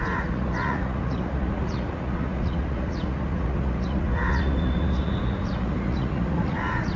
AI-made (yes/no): yes